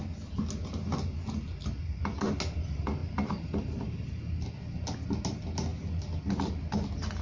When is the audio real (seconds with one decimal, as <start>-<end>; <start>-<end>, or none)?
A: 0.0-3.0; 3.8-7.2